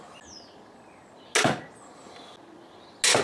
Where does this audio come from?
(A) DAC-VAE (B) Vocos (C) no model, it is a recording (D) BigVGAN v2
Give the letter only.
C